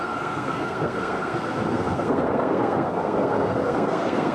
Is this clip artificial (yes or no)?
yes